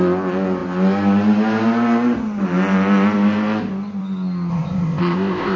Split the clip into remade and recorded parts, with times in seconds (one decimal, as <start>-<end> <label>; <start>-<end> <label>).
0.0-4.5 recorded; 4.5-5.6 remade